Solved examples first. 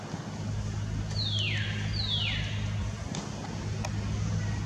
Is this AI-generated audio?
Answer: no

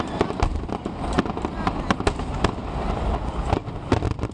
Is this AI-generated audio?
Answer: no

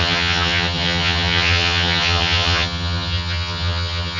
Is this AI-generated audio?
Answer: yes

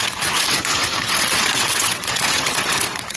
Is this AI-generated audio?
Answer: yes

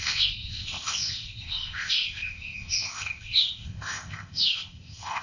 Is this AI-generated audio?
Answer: yes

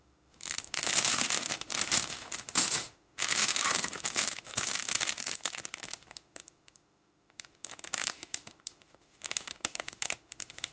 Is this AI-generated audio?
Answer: yes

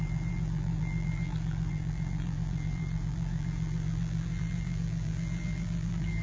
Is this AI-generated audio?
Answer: yes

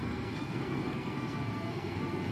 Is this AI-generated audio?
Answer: yes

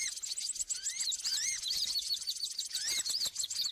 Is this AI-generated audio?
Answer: yes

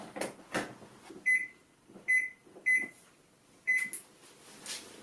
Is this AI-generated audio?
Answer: no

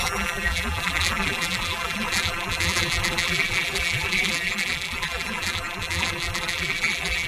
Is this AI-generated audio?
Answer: yes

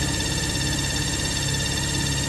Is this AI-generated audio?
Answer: no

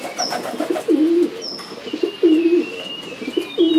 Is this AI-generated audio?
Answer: no